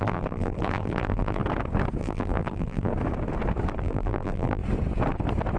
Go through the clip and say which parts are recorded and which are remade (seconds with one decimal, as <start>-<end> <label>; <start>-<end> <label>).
0.0-1.4 remade; 1.4-2.0 recorded; 2.0-2.9 remade; 2.9-3.8 recorded; 3.8-4.6 remade; 4.6-5.6 recorded